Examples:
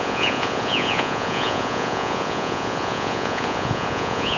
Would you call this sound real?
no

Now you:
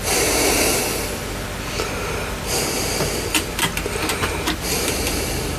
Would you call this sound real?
yes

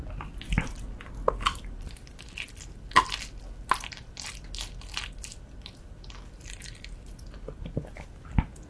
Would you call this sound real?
yes